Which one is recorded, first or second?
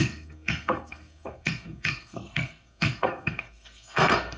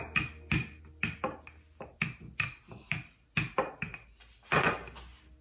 second